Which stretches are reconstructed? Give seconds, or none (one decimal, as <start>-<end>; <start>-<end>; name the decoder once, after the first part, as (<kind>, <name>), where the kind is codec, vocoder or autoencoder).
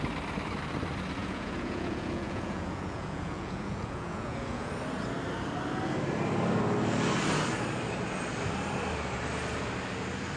1.2-4.7 (vocoder, Vocos)